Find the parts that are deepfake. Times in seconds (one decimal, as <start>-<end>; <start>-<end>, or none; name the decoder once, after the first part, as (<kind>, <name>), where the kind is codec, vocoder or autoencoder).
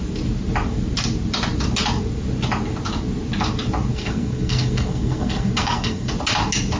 3.9-6.1 (codec, SNAC)